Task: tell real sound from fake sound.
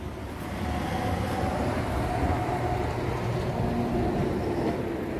real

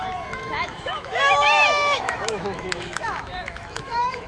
fake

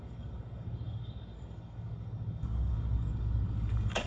fake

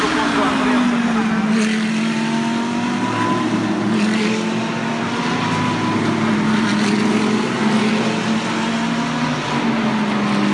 real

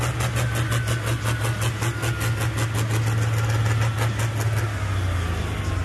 real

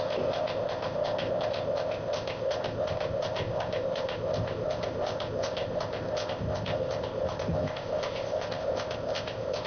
fake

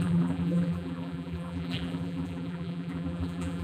fake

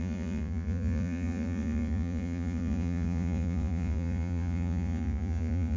fake